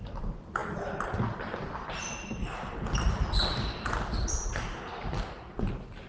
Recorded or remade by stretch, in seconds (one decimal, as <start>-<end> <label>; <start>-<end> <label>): 0.0-6.1 recorded